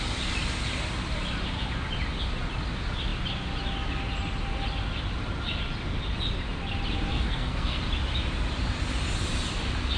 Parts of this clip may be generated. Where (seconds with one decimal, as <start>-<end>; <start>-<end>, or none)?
7.1-7.8